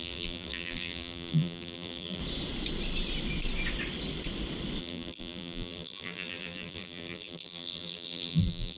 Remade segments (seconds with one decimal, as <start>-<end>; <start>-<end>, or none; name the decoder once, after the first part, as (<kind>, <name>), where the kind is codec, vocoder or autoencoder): 0.0-2.2 (vocoder, BigVGAN v2); 4.8-8.8